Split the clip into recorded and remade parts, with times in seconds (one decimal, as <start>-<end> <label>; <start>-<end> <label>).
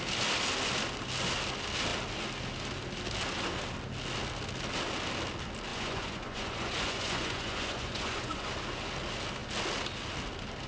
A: 0.0-5.7 recorded; 5.7-8.5 remade; 8.5-10.7 recorded